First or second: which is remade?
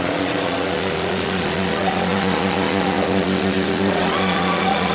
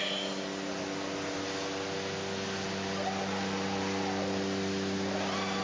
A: first